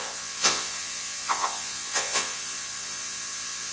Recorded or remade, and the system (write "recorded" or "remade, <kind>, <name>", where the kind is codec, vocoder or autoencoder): remade, vocoder, Vocos